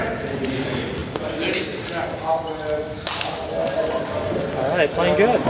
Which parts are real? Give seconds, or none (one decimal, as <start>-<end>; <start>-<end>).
0.0-5.5

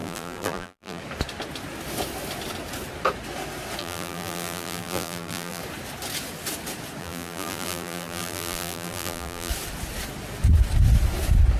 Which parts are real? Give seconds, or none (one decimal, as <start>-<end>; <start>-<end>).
1.0-3.8; 5.6-7.0; 9.5-11.6